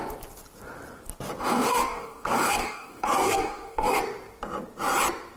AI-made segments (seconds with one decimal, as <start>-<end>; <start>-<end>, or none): 1.4-4.0